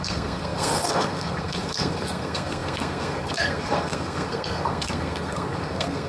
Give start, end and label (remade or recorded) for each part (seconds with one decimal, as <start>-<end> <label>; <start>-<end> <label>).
0.0-6.1 remade